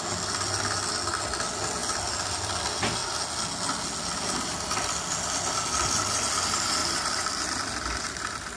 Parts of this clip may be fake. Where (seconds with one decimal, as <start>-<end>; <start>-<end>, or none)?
6.8-7.5